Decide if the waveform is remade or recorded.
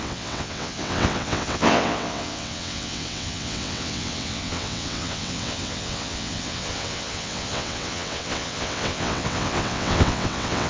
remade